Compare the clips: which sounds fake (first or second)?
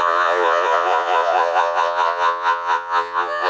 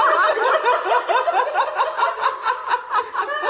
first